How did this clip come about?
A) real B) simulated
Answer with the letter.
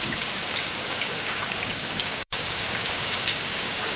B